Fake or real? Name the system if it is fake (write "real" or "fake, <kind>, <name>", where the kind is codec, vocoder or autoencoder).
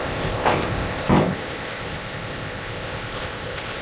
fake, codec, ZipCodec